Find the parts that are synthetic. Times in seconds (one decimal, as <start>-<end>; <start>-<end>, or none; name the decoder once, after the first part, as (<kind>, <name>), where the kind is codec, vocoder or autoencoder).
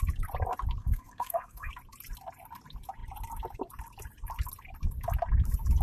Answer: 0.8-1.7 (codec, SNAC)